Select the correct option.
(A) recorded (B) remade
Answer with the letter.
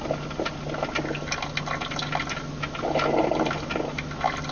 A